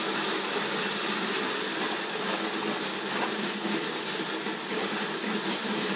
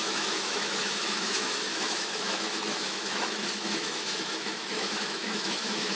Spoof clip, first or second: second